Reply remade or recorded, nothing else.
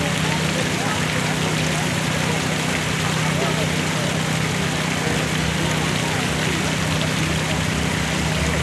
recorded